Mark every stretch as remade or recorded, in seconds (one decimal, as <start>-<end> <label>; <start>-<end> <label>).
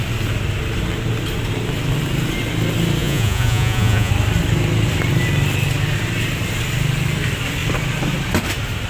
0.0-3.0 recorded; 3.0-4.1 remade; 4.1-8.9 recorded